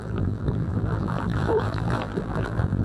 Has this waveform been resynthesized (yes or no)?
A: yes